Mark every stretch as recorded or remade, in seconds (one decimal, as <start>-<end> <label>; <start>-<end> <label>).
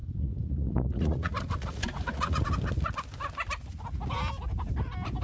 0.0-2.5 remade; 2.5-5.2 recorded